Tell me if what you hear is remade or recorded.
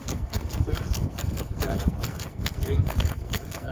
remade